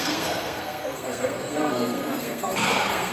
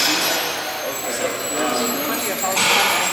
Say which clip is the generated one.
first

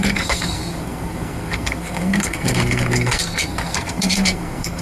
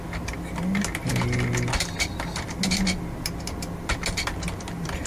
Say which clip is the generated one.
first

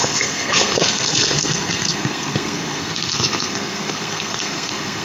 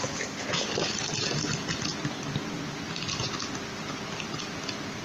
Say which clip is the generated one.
first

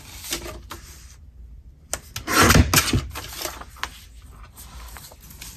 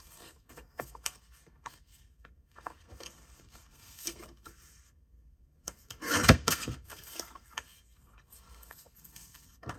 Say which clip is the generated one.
second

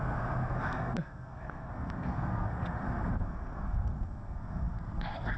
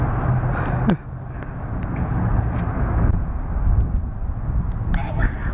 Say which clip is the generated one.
first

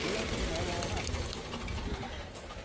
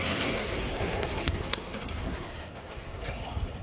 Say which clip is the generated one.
second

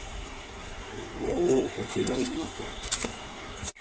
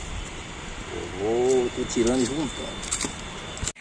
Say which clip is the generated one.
first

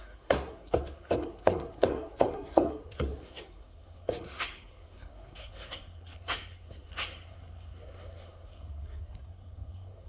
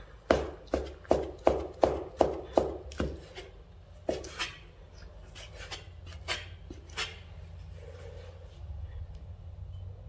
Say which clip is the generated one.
first